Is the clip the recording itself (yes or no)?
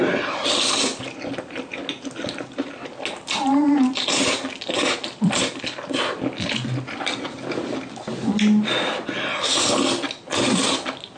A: yes